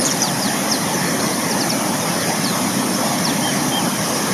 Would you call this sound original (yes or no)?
yes